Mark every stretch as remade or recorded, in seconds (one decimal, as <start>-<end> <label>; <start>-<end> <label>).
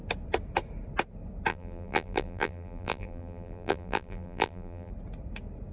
0.0-1.5 recorded; 1.5-4.9 remade; 4.9-5.7 recorded